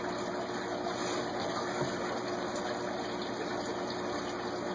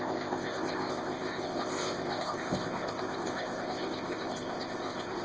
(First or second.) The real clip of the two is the first